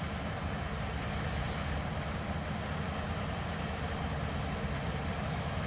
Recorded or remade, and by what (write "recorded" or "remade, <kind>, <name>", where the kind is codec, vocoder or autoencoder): recorded